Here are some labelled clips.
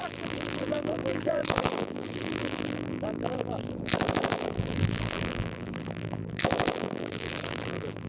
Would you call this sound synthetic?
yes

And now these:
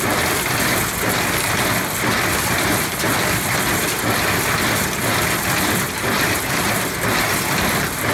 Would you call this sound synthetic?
yes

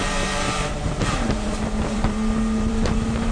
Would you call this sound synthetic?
yes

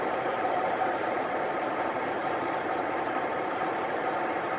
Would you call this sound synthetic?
yes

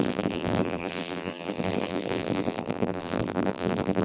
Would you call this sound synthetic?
yes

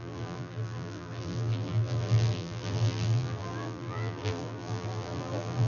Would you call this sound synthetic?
yes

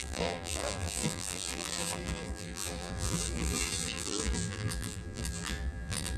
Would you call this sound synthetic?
yes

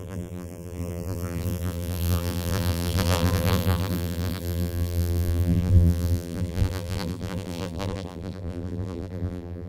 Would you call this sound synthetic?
yes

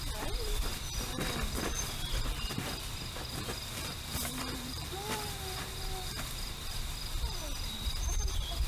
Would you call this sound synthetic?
yes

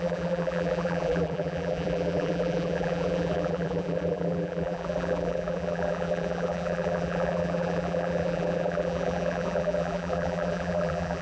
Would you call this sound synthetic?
yes